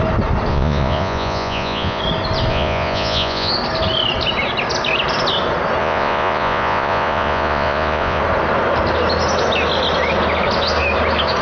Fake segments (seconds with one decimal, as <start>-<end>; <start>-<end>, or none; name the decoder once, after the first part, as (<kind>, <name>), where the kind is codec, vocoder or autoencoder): 0.5-2.0 (vocoder, Vocos); 2.5-3.5; 5.8-8.2